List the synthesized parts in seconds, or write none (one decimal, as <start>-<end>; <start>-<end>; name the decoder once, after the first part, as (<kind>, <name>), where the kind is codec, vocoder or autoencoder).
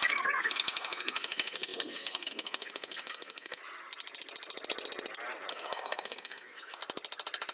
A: 0.0-3.6 (codec, SNAC); 5.5-6.8